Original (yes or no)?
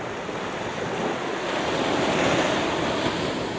yes